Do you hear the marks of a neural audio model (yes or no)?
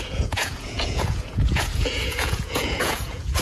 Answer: yes